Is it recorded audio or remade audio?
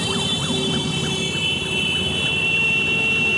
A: remade